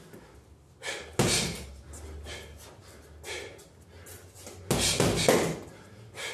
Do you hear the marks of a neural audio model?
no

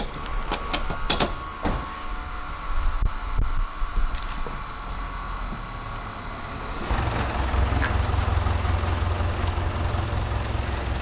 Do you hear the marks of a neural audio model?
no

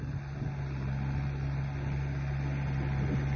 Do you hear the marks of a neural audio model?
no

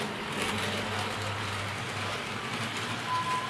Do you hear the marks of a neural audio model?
no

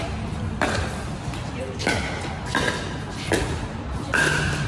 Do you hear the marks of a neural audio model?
no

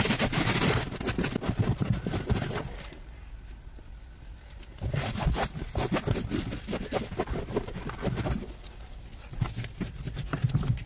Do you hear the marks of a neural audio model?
no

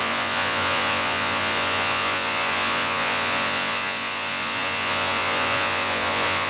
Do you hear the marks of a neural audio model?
yes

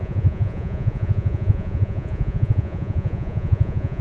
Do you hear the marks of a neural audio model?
yes